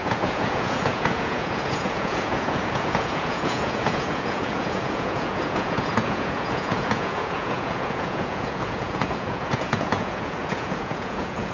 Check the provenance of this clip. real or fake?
fake